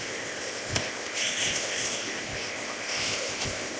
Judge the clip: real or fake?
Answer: fake